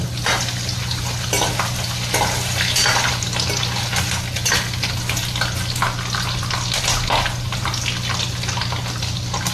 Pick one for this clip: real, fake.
real